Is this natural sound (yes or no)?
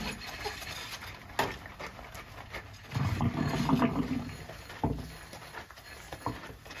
yes